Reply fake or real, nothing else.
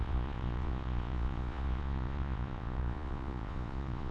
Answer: fake